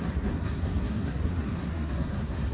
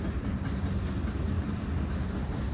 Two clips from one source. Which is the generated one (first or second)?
first